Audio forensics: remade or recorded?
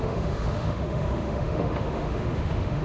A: remade